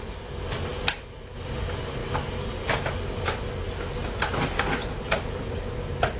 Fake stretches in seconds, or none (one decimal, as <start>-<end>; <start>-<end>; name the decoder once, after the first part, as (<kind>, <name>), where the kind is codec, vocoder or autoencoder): none